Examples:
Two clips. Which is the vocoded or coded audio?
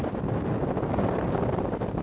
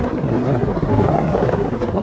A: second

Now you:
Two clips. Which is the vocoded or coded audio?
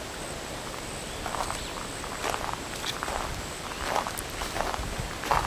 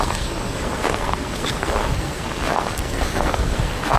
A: second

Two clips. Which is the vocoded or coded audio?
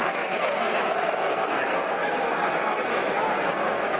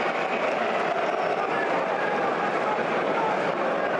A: first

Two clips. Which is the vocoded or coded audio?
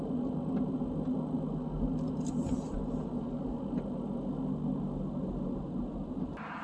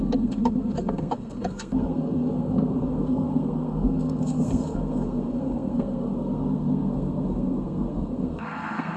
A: second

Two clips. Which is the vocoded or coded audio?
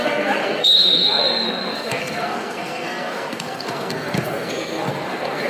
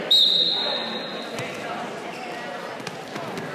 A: first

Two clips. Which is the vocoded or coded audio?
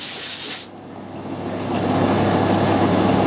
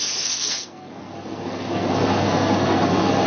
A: second